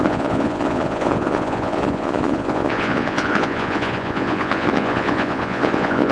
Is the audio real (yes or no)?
no